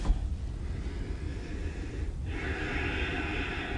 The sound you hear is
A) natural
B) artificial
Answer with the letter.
A